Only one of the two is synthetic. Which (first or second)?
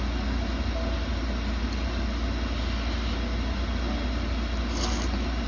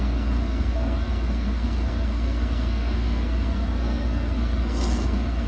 second